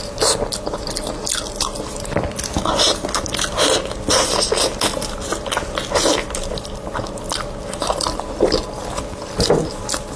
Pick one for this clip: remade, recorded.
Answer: recorded